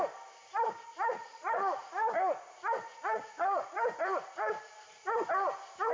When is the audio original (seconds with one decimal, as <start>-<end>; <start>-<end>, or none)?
0.0-1.1; 4.6-5.9